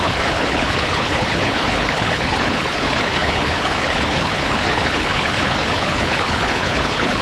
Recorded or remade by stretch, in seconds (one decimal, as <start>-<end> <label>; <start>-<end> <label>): 0.0-7.2 remade